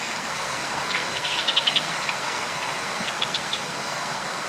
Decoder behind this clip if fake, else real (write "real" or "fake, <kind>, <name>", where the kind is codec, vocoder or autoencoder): fake, codec, SNAC